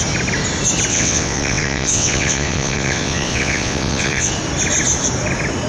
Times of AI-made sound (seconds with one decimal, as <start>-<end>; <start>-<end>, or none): 0.9-4.3